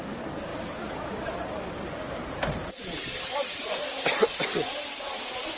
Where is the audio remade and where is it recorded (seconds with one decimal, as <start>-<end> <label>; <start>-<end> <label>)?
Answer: 0.0-0.5 recorded; 0.5-3.9 remade; 3.9-5.6 recorded